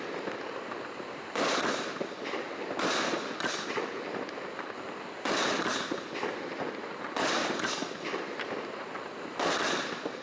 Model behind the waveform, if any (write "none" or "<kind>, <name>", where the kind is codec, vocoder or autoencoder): none